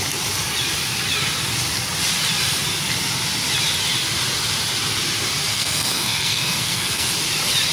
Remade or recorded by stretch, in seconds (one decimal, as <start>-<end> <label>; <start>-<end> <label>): 0.0-5.5 recorded; 5.5-7.1 remade; 7.1-7.7 recorded